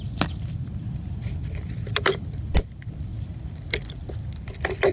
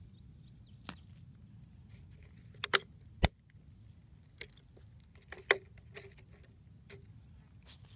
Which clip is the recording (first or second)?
second